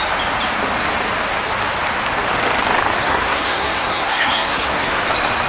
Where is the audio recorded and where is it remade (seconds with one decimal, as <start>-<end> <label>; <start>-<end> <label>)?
0.0-3.0 recorded; 3.0-5.0 remade; 5.0-5.5 recorded